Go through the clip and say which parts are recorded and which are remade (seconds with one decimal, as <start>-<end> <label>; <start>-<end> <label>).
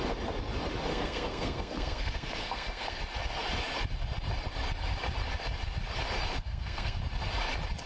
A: 0.0-0.9 recorded; 0.9-3.0 remade; 3.0-6.4 recorded; 6.4-7.0 remade; 7.0-7.9 recorded